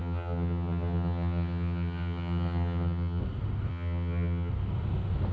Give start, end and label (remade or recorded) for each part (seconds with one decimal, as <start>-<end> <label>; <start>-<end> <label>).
0.0-3.2 remade; 3.2-3.7 recorded; 3.7-4.5 remade; 4.5-5.3 recorded